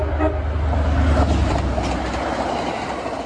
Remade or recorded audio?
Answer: recorded